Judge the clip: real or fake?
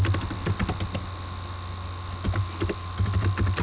real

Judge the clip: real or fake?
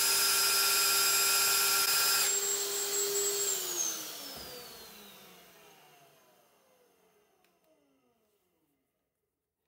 real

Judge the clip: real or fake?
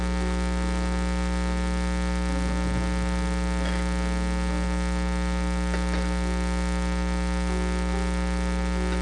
real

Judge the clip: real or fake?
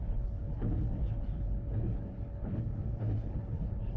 fake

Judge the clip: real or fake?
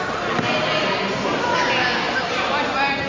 real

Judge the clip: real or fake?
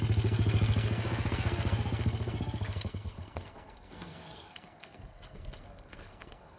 fake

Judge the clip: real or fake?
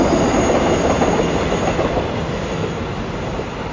real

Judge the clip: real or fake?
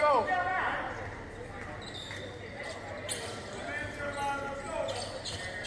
real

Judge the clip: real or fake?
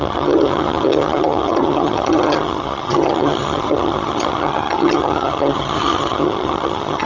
fake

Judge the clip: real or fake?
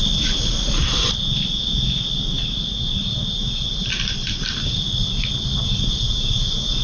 real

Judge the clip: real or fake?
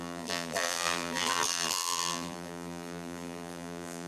fake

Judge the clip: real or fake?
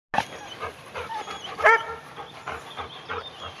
real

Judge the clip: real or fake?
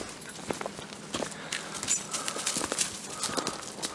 real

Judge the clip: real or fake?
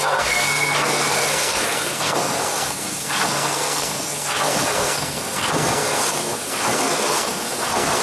fake